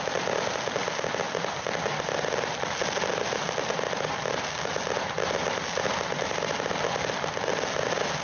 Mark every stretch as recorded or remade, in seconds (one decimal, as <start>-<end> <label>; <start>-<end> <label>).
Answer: 0.0-8.2 recorded